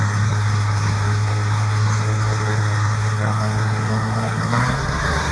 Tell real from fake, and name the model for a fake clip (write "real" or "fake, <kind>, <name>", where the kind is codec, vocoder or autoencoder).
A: fake, codec, SNAC